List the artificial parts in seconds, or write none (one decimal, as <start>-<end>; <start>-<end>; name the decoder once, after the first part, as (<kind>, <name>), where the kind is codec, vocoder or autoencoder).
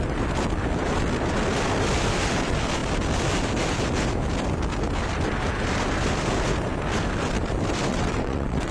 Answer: 7.9-8.7 (vocoder, WaveNeXt)